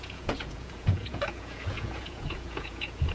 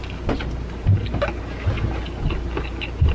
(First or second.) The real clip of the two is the second